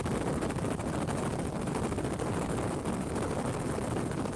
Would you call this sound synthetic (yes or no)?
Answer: yes